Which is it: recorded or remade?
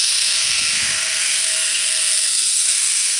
remade